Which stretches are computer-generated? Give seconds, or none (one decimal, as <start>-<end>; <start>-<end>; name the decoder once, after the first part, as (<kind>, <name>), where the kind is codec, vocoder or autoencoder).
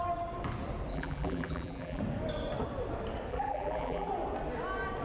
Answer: 0.9-2.0 (vocoder, BigVGAN v2); 3.3-4.1